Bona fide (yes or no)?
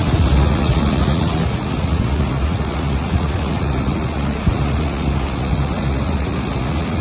no